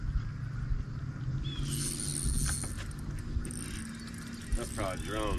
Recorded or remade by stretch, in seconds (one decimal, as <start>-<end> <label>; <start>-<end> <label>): 0.0-5.4 recorded

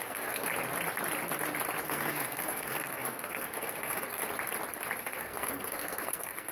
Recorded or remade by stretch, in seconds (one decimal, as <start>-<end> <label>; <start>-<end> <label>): 0.0-0.5 remade; 0.5-1.8 recorded; 1.8-4.2 remade; 4.2-5.0 recorded; 5.0-6.5 remade

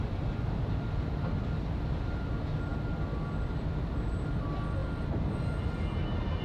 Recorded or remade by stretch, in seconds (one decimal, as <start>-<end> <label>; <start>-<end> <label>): 0.0-6.4 recorded

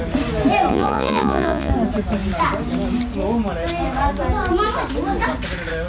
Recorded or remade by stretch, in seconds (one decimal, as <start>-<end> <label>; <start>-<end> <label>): 0.0-0.7 recorded; 0.7-1.7 remade; 1.7-5.9 recorded

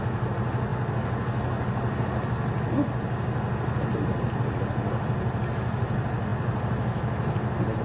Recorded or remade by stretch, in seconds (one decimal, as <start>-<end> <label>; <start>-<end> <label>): 0.0-7.8 recorded

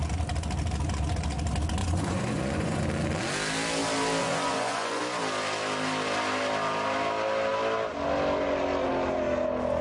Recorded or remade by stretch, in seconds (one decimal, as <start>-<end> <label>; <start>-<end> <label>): 0.0-1.8 recorded; 1.8-2.8 remade; 2.8-4.2 recorded; 4.2-5.0 remade; 5.0-9.8 recorded

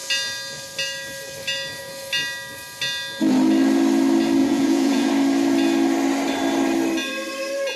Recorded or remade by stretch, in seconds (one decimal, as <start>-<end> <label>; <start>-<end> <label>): 0.0-4.4 recorded; 4.4-5.1 remade; 5.1-7.8 recorded

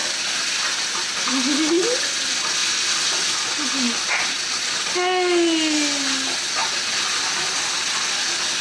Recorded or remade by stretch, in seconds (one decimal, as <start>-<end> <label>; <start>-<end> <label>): 0.0-1.3 remade; 1.3-8.6 recorded